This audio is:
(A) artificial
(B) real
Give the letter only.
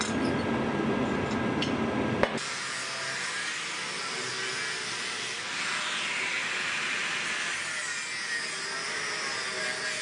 B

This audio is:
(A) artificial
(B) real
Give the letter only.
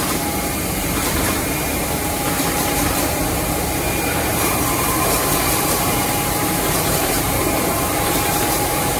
A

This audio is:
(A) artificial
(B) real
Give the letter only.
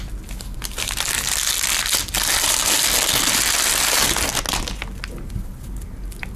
B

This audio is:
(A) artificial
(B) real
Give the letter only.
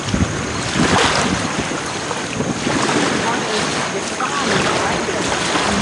B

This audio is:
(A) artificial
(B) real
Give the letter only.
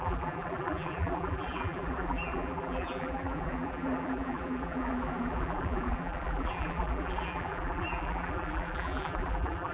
A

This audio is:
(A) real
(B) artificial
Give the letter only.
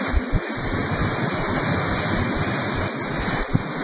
A